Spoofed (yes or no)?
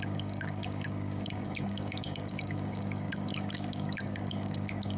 yes